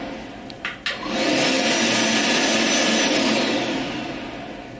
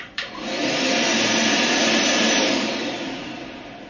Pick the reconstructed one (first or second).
second